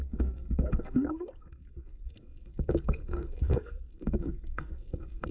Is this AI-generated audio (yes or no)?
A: yes